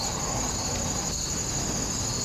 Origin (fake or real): real